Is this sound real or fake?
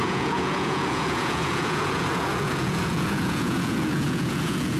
fake